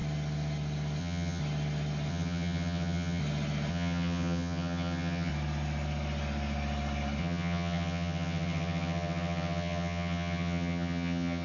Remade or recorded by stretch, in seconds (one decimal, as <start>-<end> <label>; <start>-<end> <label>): 0.0-1.0 recorded; 1.0-1.4 remade; 1.4-2.1 recorded; 2.1-3.2 remade; 3.2-3.7 recorded; 3.7-5.3 remade; 5.3-7.2 recorded; 7.2-11.4 remade